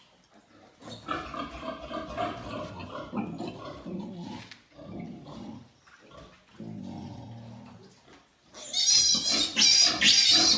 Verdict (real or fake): real